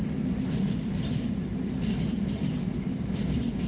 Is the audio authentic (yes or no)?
yes